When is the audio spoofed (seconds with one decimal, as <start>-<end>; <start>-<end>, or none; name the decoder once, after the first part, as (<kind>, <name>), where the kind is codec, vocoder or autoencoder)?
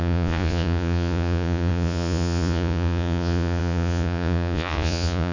0.0-5.3 (vocoder, Vocos)